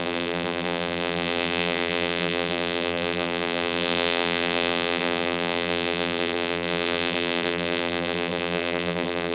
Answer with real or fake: fake